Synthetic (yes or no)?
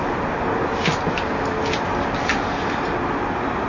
no